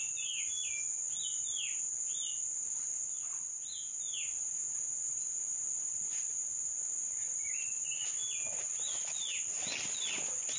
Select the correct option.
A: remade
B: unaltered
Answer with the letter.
B